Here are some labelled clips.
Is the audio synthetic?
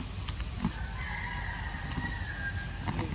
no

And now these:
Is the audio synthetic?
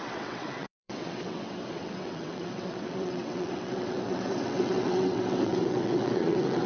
yes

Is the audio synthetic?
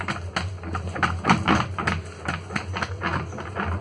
no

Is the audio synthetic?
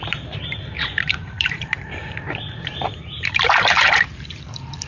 yes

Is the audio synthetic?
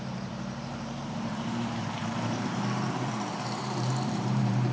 yes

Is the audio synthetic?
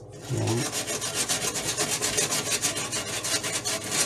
no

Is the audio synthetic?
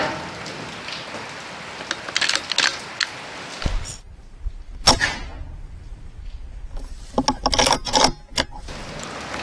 no